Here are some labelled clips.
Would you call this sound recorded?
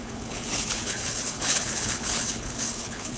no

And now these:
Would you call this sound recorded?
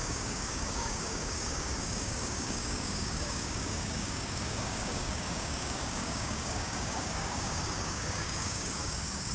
no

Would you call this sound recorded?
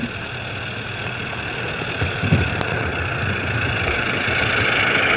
yes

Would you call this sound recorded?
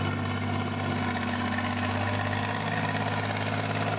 yes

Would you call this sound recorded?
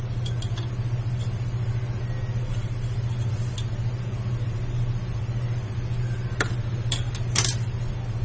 no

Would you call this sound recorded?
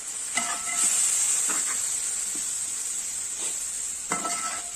yes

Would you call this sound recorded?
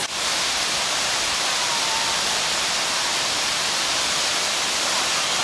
yes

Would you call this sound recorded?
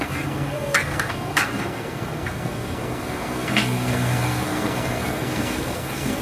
no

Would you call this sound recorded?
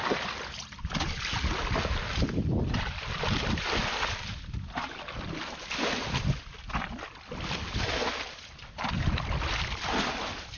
yes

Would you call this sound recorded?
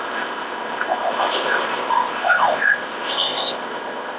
no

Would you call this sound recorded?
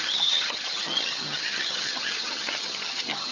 no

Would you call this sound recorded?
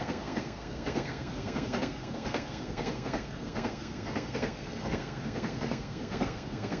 no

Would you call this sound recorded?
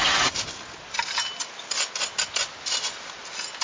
yes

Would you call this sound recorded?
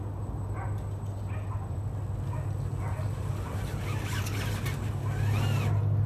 yes